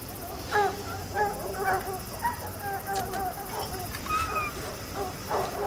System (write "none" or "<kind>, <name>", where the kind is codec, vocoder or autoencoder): none